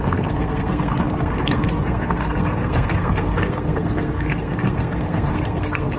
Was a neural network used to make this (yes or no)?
yes